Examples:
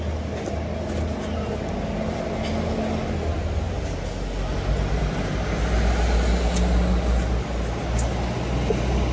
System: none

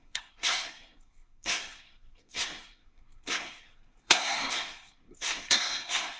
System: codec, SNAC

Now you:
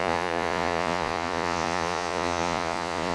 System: vocoder, Vocos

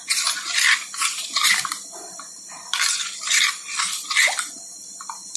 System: vocoder, BigVGAN v2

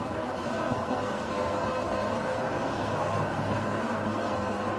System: codec, SNAC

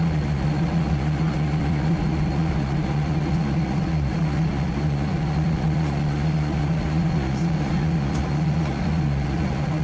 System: vocoder, Vocos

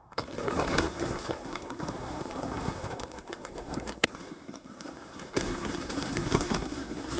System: codec, SNAC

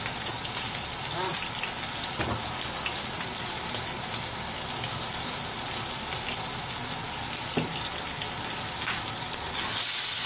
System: none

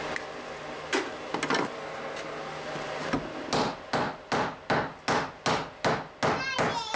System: none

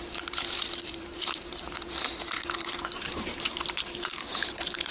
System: vocoder, BigVGAN v2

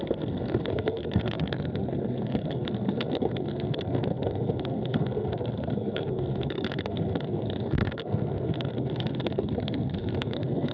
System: codec, SNAC